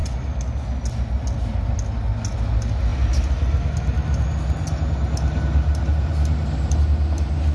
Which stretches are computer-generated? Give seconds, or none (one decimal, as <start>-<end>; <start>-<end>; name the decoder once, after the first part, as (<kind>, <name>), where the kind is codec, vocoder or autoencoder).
none